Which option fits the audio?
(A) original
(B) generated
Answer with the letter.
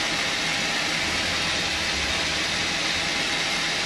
A